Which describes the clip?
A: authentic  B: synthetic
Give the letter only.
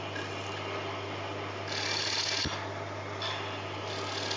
A